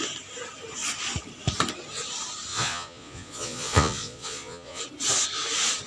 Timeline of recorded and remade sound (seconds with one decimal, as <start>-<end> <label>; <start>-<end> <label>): 0.0-2.5 recorded; 2.5-4.8 remade; 4.8-5.9 recorded